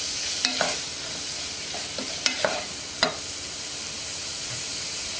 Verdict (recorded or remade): recorded